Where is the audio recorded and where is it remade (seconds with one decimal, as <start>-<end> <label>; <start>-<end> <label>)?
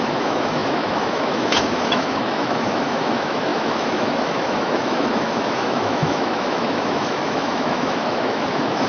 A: 0.0-8.9 remade